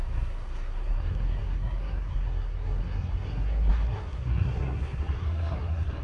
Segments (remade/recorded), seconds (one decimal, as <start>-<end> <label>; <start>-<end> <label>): 0.0-6.0 remade

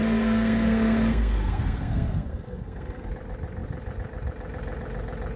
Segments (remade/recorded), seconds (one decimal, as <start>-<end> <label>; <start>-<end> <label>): 0.0-3.1 remade; 3.1-5.4 recorded